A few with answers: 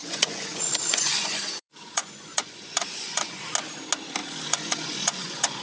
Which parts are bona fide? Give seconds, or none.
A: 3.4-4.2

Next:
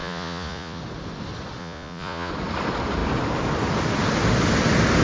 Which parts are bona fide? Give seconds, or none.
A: 0.8-1.6; 2.3-5.0